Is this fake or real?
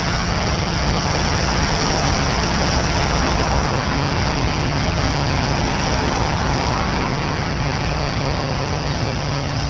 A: fake